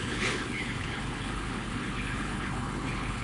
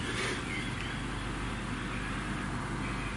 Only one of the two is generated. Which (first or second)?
first